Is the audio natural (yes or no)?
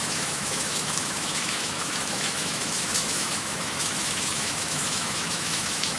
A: no